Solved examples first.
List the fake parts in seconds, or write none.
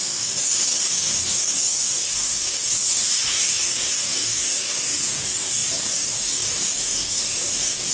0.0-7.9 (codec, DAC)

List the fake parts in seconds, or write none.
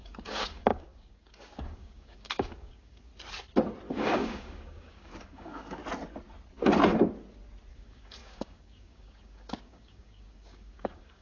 0.0-3.1 (codec, DAC); 3.9-5.8; 7.7-11.2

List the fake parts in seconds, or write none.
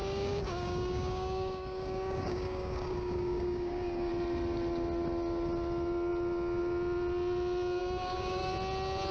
0.0-4.1 (codec, DAC); 7.8-8.5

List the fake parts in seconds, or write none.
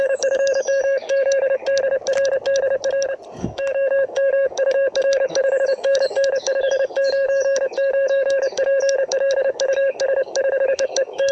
0.0-1.6 (codec, DAC); 3.4-11.3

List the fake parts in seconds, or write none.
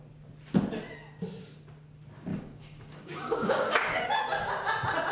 2.3-4.2 (codec, DAC)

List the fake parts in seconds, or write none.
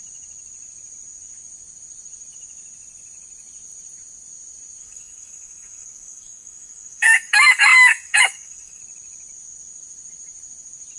4.8-8.8 (codec, DAC)